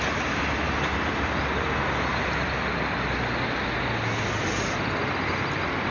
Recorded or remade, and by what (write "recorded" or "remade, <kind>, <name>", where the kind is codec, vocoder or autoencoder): recorded